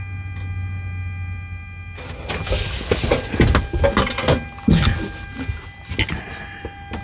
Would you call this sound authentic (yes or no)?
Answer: yes